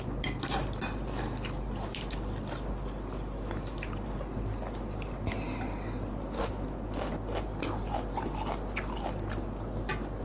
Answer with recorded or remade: recorded